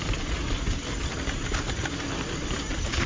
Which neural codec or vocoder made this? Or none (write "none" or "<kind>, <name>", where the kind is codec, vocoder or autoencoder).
none